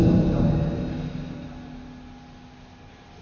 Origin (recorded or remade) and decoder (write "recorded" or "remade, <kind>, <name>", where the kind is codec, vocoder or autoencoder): recorded